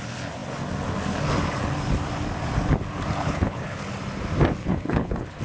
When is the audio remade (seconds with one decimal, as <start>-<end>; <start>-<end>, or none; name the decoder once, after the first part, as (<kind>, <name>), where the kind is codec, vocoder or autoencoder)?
3.2-3.8 (codec, HILCodec); 4.6-5.4